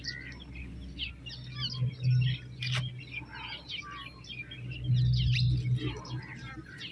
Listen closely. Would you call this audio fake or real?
real